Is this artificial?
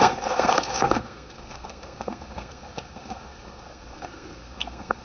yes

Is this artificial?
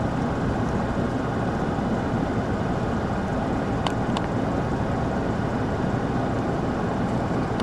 no